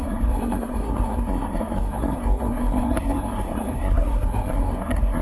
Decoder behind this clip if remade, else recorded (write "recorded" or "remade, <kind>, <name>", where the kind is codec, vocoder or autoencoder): remade, codec, SNAC